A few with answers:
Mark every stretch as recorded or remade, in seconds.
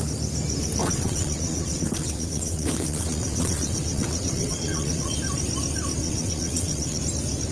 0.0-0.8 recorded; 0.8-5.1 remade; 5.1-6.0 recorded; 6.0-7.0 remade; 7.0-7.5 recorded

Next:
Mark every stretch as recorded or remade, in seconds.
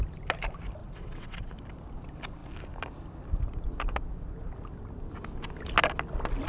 0.0-0.8 recorded; 0.8-1.5 remade; 1.5-6.5 recorded